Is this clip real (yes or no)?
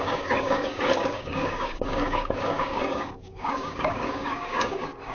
no